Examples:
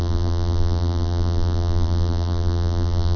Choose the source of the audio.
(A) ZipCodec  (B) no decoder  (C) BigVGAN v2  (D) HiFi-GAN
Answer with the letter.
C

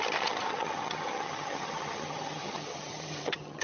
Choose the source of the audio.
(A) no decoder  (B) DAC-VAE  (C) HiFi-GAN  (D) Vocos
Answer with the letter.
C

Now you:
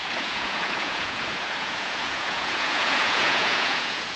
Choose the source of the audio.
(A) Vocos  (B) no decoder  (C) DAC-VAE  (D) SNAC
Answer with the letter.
A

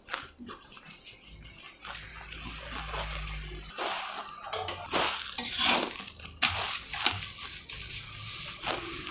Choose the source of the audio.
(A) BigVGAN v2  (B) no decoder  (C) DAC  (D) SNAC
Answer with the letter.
B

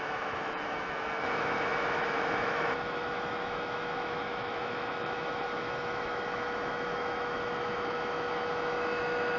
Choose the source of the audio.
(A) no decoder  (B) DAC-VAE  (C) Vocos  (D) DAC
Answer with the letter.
B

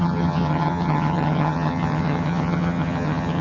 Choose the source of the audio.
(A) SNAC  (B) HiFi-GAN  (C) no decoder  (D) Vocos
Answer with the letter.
B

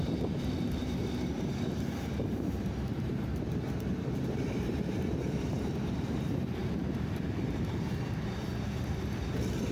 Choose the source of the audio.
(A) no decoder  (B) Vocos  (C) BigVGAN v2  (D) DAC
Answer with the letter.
C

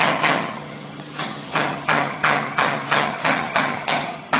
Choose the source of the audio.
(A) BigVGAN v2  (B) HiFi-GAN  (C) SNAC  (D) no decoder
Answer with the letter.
B